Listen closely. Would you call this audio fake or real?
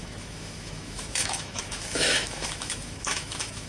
fake